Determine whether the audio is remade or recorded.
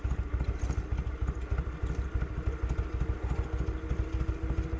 recorded